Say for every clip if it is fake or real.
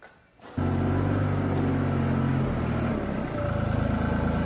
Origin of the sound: real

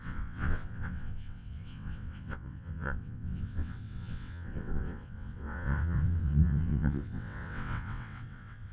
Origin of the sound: fake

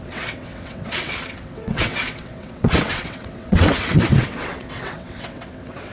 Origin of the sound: fake